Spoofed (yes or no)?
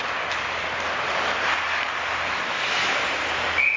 no